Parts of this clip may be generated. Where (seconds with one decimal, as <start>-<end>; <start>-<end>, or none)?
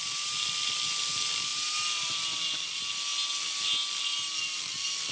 none